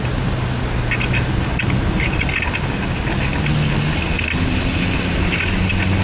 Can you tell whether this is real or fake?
real